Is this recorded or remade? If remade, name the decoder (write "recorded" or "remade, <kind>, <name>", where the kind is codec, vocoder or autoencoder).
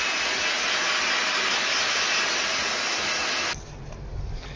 recorded